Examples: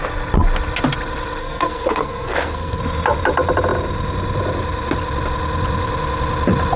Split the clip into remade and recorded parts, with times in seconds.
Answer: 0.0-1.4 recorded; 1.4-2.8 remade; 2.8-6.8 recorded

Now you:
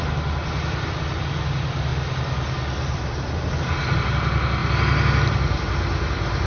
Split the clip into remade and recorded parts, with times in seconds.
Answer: 0.0-6.5 recorded

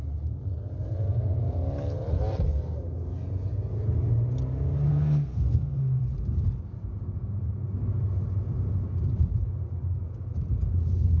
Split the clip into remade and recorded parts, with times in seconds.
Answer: 0.0-4.9 recorded; 4.9-6.0 remade; 6.0-11.2 recorded

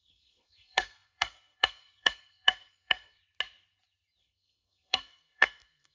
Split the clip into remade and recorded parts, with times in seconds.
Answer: 0.0-3.2 remade; 3.2-4.2 recorded; 4.2-5.9 remade

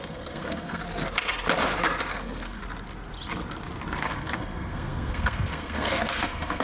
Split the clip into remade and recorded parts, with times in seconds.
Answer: 0.0-0.8 remade; 0.8-2.1 recorded; 2.1-2.6 remade; 2.6-4.0 recorded; 4.0-6.6 remade